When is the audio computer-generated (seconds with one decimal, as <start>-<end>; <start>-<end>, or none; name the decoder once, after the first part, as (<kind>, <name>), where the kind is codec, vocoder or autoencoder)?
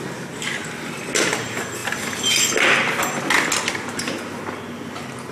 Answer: none